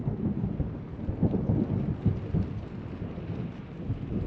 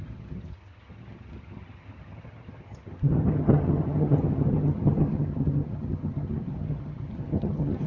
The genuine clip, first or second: first